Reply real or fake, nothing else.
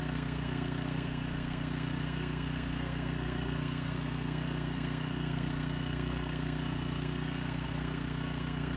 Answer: fake